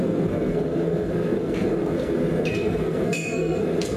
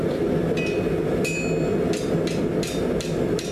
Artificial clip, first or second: first